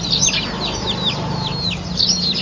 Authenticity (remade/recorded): recorded